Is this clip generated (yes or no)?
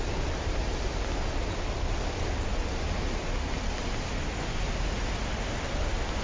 no